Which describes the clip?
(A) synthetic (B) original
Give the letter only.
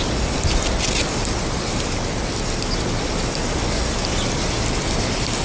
B